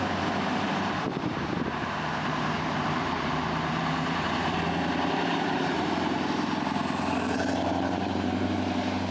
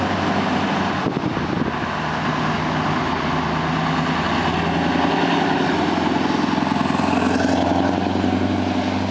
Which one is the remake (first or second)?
first